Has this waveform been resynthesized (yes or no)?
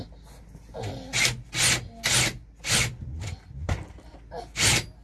no